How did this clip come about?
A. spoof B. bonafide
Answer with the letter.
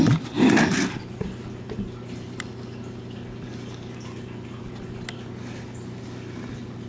B